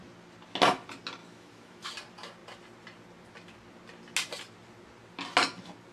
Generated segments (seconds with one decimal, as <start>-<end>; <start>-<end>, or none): 1.2-1.9